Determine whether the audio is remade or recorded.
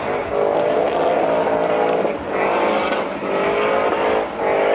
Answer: recorded